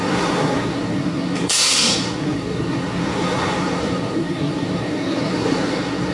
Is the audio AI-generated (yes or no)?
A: yes